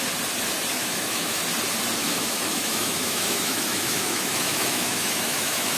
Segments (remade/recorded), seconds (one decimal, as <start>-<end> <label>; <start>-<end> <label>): 0.0-0.8 recorded; 0.8-1.4 remade; 1.4-2.0 recorded; 2.0-5.8 remade